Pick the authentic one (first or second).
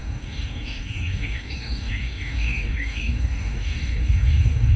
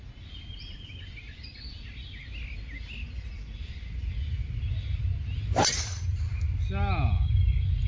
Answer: second